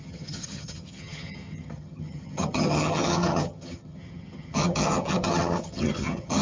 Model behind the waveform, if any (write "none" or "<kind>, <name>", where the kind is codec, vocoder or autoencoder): vocoder, HiFi-GAN